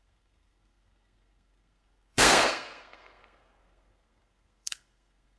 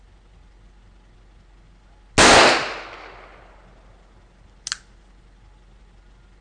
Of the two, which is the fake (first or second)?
first